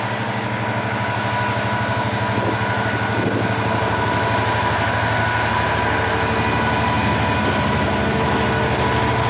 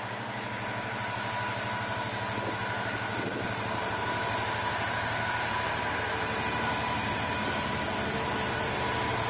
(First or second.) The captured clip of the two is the first